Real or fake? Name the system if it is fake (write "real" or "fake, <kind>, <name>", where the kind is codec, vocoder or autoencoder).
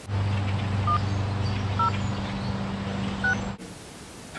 real